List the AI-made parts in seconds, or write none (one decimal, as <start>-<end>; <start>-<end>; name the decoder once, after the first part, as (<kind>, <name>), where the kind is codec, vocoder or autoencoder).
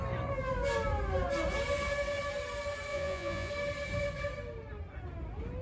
2.9-3.5 (vocoder, Vocos)